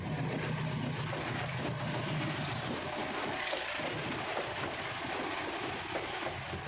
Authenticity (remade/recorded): recorded